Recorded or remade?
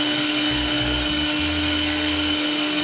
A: remade